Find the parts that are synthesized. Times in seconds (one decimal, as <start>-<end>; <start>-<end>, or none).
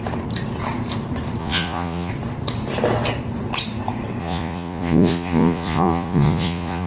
1.4-2.1; 4.2-6.9